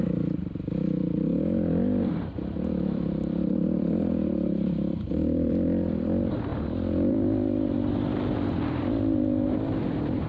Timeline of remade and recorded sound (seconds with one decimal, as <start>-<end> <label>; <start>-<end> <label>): 0.0-6.5 remade; 6.5-7.1 recorded; 7.1-10.3 remade